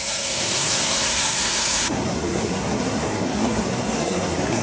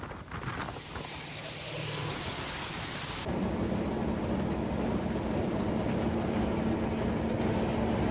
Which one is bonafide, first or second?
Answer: second